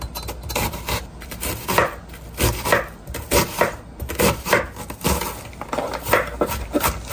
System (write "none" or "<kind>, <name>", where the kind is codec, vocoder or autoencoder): none